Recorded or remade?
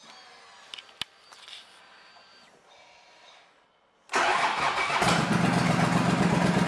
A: recorded